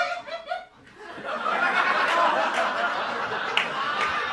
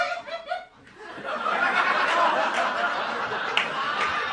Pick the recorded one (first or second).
first